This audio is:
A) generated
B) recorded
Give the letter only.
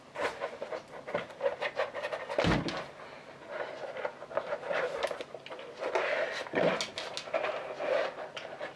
B